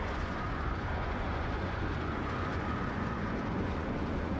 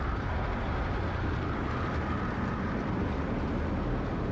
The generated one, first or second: first